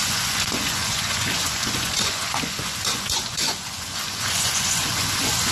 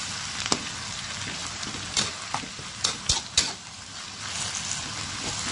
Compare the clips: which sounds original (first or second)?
second